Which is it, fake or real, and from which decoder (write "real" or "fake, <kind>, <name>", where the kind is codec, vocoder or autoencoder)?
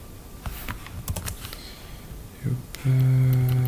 real